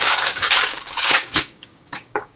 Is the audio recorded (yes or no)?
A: no